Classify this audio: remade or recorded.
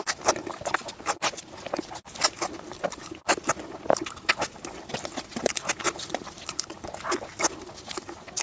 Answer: recorded